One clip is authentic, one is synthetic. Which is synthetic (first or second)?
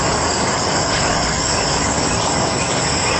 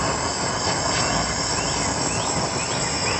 first